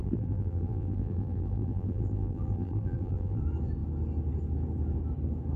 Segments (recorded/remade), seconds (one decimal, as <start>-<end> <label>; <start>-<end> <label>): 0.0-3.4 remade; 3.4-5.6 recorded